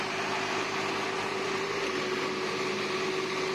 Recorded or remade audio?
recorded